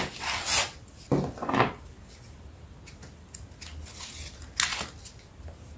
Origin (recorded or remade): recorded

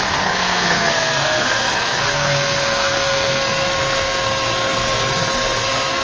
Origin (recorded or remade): remade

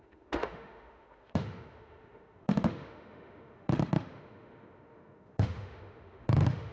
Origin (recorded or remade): remade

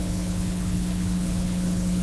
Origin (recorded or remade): remade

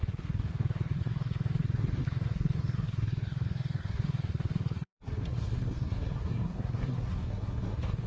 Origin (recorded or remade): remade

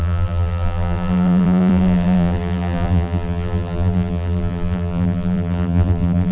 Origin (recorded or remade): remade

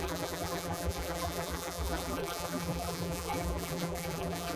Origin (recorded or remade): remade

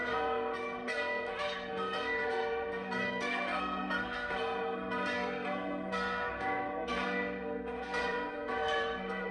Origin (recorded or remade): remade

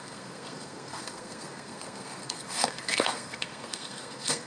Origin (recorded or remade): remade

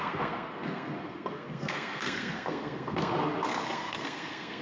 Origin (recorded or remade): remade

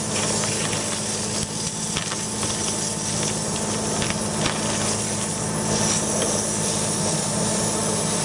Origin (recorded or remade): recorded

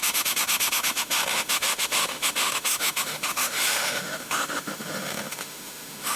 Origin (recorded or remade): remade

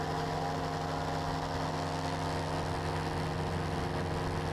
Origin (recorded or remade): recorded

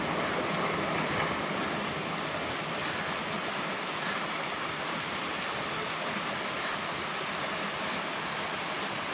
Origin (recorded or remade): recorded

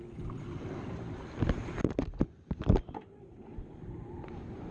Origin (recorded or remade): recorded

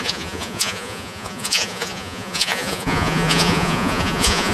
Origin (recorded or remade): remade